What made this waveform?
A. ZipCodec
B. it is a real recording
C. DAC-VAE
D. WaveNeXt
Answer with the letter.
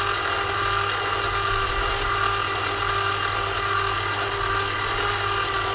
B